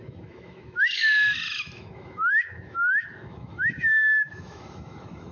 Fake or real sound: fake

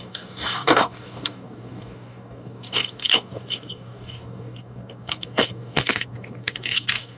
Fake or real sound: fake